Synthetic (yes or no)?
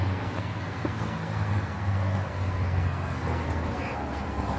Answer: yes